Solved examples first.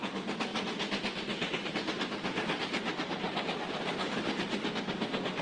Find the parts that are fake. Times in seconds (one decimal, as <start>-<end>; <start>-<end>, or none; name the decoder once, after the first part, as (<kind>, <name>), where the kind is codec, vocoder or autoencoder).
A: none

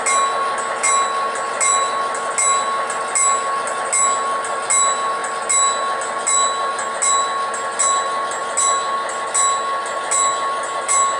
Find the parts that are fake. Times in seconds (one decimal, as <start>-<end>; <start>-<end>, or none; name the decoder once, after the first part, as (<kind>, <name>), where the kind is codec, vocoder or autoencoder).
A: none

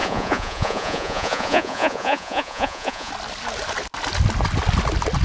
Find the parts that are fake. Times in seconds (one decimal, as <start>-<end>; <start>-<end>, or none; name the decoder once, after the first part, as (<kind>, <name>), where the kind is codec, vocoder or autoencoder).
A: 0.0-3.1 (vocoder, Vocos)

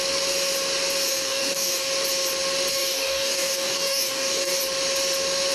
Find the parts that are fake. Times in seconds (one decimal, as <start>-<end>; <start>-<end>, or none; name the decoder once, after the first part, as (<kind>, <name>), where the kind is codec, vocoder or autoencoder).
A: 1.1-1.9 (codec, DAC); 2.7-4.6